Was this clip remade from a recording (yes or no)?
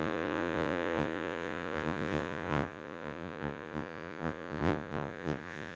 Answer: yes